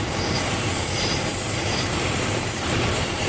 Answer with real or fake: fake